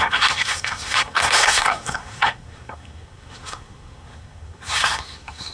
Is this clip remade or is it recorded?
remade